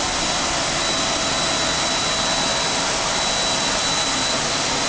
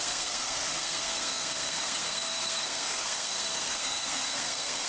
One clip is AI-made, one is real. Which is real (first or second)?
first